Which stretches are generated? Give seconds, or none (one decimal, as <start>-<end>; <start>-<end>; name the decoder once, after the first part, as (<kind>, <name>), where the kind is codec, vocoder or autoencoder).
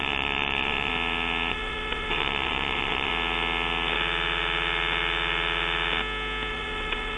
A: 0.0-0.9 (vocoder, WaveNeXt); 1.5-3.1; 6.5-7.2